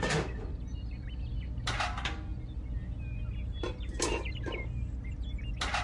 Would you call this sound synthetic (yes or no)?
no